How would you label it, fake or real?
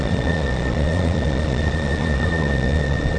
fake